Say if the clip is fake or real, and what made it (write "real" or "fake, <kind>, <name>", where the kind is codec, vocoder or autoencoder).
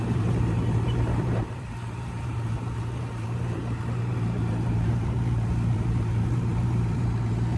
fake, vocoder, BigVGAN v2